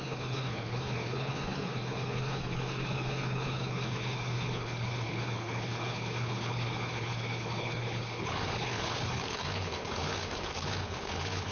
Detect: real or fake fake